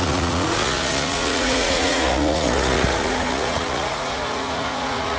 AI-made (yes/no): yes